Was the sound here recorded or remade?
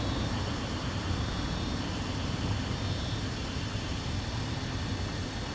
recorded